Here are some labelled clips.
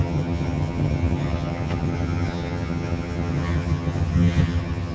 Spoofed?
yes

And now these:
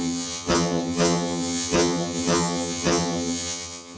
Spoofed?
yes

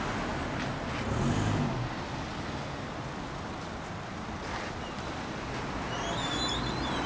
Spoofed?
no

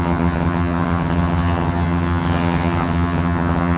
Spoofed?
yes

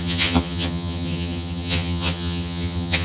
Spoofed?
yes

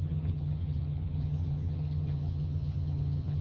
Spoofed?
yes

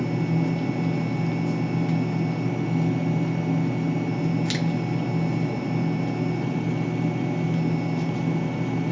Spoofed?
no